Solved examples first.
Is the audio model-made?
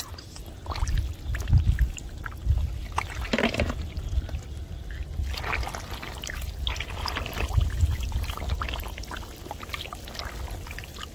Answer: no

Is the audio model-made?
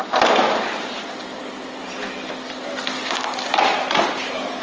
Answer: no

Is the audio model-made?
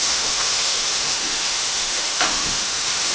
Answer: yes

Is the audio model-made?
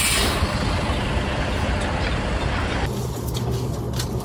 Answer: no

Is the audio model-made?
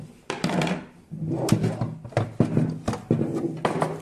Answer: no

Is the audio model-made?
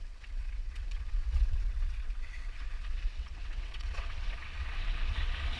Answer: yes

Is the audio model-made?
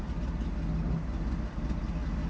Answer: no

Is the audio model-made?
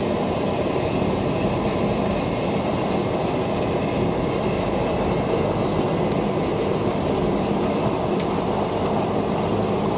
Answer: yes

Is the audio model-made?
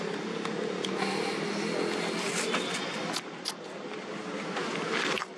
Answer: no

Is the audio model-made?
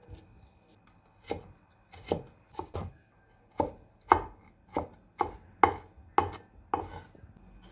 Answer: no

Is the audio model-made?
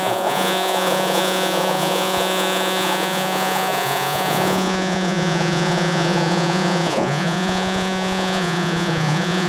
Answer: yes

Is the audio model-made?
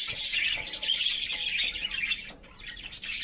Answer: yes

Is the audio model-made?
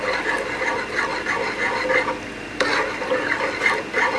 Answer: no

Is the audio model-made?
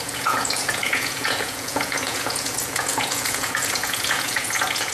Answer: yes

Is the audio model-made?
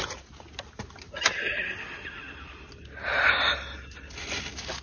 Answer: no